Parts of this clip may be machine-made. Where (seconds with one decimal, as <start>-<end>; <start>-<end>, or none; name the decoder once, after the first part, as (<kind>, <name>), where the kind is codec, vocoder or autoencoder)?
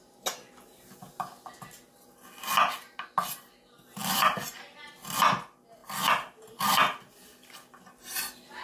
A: none